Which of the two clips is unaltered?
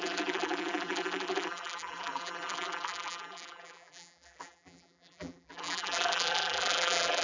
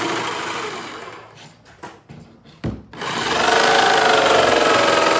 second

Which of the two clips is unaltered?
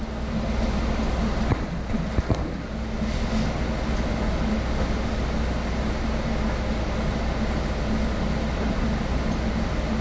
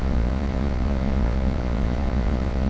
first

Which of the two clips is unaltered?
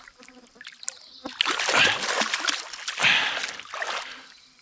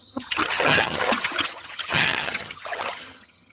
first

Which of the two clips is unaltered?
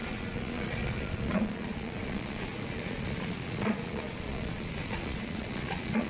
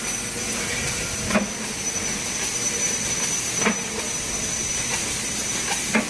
second